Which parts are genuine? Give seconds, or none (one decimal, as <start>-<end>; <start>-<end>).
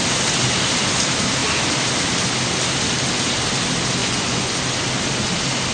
0.0-4.0; 4.6-5.7